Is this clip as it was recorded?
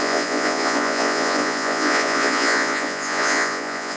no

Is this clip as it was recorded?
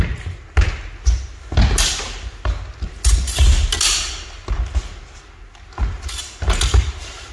yes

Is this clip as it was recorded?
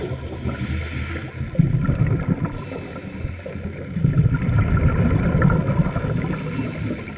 yes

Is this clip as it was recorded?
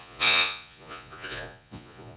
no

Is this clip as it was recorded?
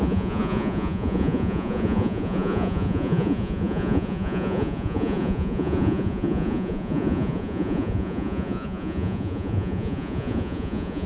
no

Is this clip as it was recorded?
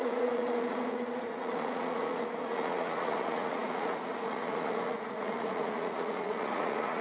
no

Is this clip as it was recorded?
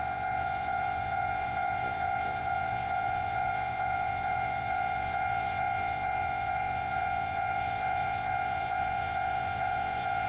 no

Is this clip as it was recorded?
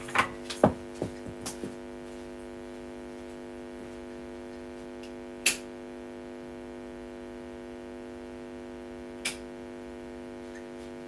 yes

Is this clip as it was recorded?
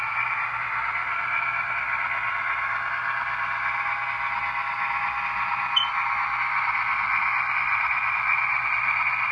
yes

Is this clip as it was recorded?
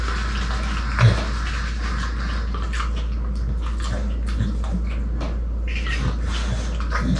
yes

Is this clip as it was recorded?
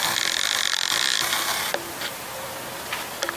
yes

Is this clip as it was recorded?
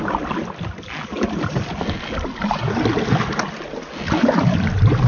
yes